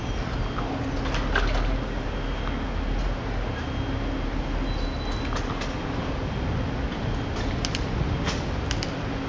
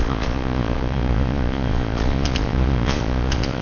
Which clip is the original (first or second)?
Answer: first